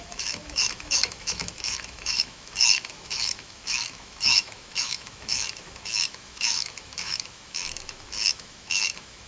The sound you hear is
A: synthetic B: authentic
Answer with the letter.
A